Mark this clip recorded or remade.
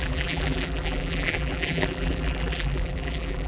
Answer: remade